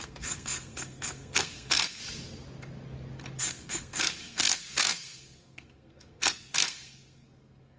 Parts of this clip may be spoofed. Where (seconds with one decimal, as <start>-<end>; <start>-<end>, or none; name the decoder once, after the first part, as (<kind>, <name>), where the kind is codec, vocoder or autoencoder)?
0.0-2.0 (codec, SNAC); 3.4-7.8